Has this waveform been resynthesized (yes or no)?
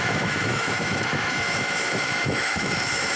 yes